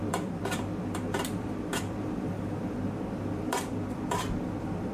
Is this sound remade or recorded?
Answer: remade